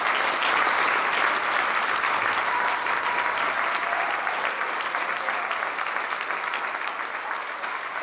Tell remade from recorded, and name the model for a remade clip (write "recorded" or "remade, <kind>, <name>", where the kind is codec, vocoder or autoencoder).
recorded